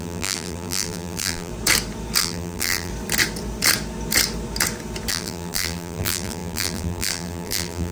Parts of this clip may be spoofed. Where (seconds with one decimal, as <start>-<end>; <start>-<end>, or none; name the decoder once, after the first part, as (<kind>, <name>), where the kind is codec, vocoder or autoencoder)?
0.0-1.5 (vocoder, BigVGAN v2); 2.2-2.9; 5.1-7.9